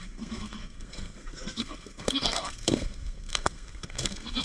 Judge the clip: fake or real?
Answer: fake